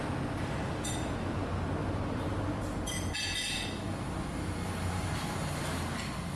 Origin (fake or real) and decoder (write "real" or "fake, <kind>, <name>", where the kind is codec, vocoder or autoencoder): real